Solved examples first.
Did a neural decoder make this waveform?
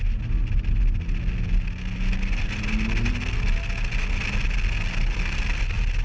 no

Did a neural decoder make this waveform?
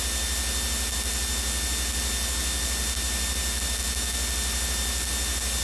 no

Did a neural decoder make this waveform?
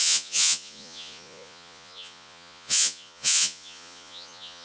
yes